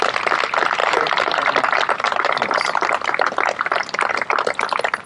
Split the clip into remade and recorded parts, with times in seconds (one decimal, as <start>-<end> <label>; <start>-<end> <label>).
0.0-0.8 recorded; 0.8-2.9 remade; 2.9-5.1 recorded